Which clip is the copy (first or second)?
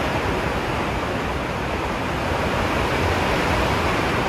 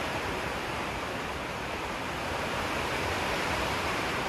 second